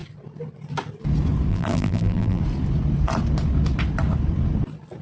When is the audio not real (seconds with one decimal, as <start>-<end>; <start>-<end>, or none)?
1.5-2.4

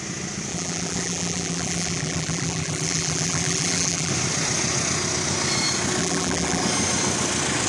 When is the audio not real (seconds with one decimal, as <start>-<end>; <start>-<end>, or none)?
0.5-4.1; 6.0-6.6

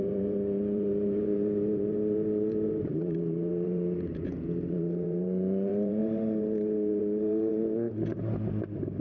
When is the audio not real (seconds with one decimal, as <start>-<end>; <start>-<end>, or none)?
0.0-9.0

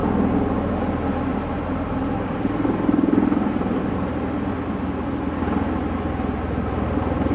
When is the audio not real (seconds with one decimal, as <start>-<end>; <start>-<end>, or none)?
1.3-3.9